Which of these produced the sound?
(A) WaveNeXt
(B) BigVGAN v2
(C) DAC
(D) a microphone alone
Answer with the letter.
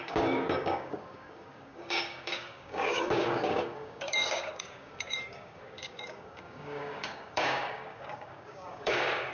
C